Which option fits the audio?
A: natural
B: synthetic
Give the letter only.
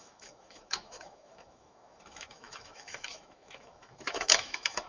B